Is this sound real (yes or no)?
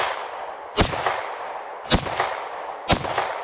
yes